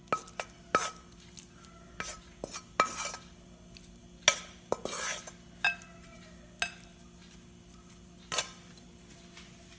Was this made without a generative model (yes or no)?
yes